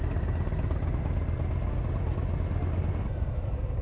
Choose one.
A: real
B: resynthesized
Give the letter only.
A